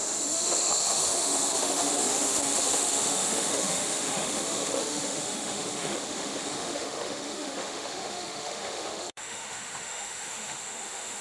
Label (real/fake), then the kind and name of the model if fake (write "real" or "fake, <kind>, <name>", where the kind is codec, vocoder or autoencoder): fake, autoencoder, DAC-VAE